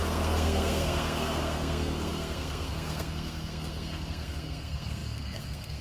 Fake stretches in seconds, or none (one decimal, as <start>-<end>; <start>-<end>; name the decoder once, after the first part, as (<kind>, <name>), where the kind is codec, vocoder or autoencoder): 0.0-5.8 (codec, SNAC)